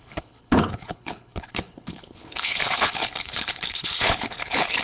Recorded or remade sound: remade